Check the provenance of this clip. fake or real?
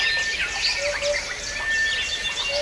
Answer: real